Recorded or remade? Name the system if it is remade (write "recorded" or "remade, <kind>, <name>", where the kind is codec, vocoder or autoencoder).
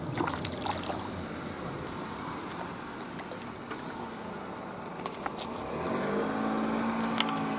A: recorded